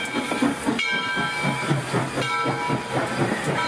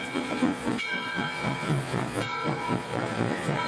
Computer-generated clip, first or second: second